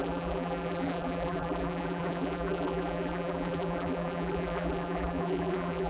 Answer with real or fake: fake